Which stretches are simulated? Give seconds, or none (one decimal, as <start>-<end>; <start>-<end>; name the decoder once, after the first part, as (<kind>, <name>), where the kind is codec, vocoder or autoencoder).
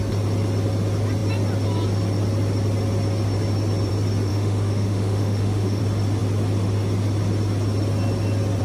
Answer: 4.3-5.8 (autoencoder, DAC-VAE)